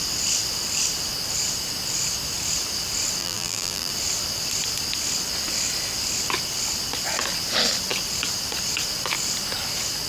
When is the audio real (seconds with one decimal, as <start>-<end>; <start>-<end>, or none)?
0.0-3.2; 3.9-10.1